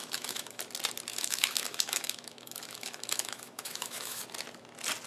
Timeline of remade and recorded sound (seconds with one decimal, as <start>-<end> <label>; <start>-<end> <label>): 0.0-0.6 remade; 0.6-1.1 recorded; 1.1-4.2 remade; 4.2-5.1 recorded